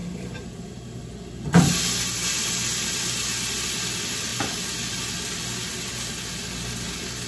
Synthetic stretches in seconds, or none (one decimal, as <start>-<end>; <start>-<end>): 0.0-1.0